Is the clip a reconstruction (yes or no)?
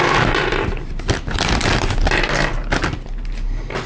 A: no